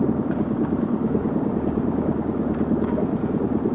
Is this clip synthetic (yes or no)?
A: yes